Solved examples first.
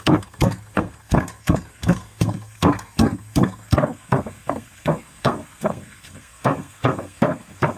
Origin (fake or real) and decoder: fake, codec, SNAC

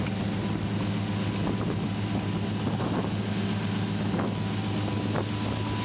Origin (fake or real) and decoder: real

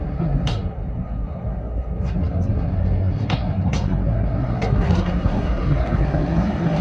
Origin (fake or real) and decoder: fake, codec, SNAC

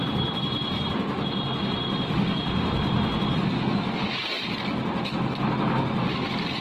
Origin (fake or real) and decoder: real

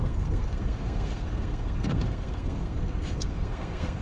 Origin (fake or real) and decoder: fake, codec, SNAC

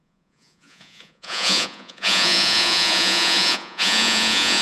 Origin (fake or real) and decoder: fake, vocoder, Vocos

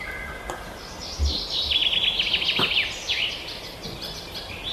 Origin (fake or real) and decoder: real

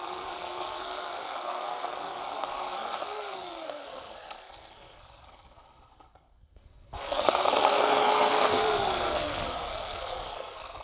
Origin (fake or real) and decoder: fake, codec, SNAC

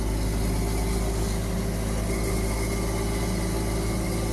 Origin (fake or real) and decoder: real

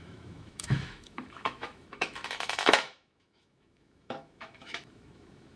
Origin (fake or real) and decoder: fake, autoencoder, DAC-VAE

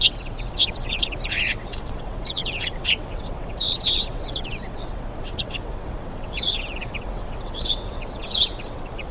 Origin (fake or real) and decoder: fake, vocoder, WaveNeXt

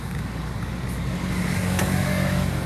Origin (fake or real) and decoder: fake, codec, DAC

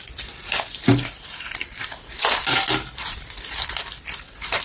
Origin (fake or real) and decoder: fake, vocoder, BigVGAN v2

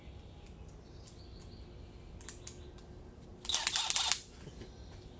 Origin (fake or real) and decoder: real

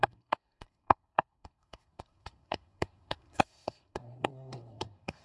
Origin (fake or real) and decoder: fake, codec, SNAC